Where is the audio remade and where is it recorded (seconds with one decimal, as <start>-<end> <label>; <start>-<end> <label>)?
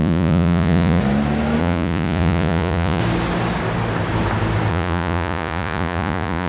0.0-1.0 remade; 1.0-1.6 recorded; 1.6-3.0 remade; 3.0-4.7 recorded; 4.7-6.5 remade